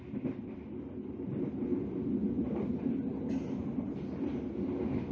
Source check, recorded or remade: recorded